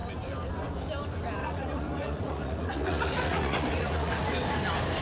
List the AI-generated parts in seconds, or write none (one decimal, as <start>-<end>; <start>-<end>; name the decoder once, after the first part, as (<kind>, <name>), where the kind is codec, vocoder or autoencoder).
1.4-4.1 (vocoder, Vocos)